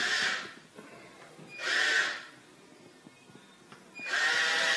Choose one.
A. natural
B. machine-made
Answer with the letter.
A